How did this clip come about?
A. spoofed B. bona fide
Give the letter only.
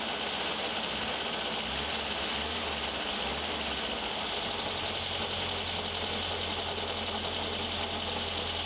B